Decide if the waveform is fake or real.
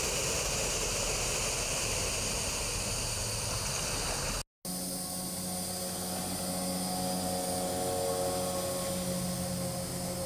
real